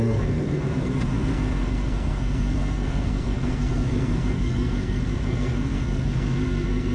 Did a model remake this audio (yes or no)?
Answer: yes